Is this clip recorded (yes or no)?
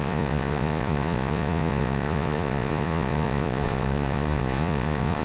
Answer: no